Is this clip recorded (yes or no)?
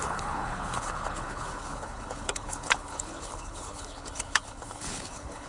no